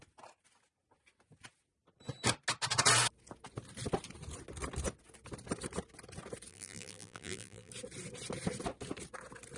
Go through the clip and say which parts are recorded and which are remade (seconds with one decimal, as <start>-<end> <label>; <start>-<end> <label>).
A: 0.0-6.5 recorded; 6.5-7.7 remade; 7.7-9.6 recorded